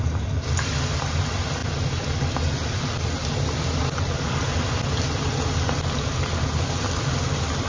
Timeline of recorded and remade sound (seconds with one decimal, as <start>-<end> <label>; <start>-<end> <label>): 0.0-7.7 recorded